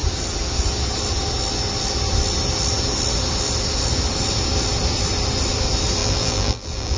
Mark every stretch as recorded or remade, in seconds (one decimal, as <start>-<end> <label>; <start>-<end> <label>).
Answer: 0.0-6.0 recorded; 6.0-7.0 remade